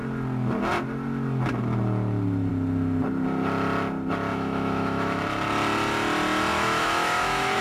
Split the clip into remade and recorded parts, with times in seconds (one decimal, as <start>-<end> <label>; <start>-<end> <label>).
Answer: 0.0-4.3 recorded; 4.3-5.2 remade; 5.2-6.5 recorded; 6.5-7.6 remade